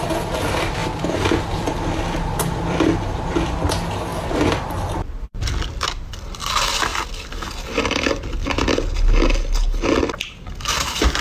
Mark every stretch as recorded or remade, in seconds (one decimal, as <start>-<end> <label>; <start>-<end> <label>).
0.0-0.8 recorded; 0.8-3.3 remade; 3.3-4.1 recorded; 4.1-6.4 remade; 6.4-11.2 recorded